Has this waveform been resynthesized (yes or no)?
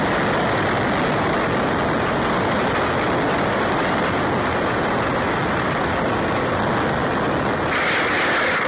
no